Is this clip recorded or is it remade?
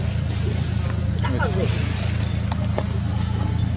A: recorded